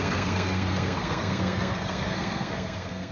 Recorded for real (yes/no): no